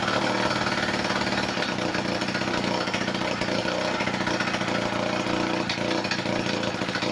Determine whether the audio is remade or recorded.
recorded